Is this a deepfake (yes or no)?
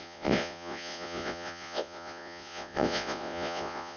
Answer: yes